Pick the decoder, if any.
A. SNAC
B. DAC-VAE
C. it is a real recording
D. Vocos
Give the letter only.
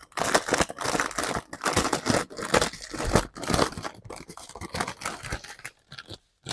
C